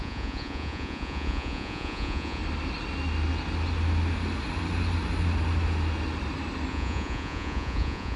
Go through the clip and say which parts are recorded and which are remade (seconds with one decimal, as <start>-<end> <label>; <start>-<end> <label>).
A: 0.0-2.4 remade; 2.4-6.7 recorded; 6.7-8.2 remade